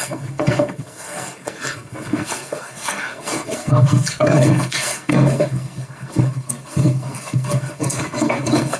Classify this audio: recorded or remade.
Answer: remade